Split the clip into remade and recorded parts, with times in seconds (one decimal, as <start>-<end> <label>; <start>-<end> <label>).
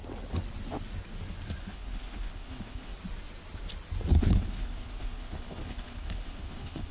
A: 0.0-1.6 recorded; 1.6-2.9 remade; 2.9-4.2 recorded; 4.2-6.9 remade